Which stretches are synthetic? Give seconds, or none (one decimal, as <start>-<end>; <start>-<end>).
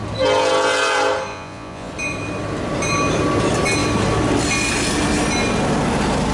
1.3-1.9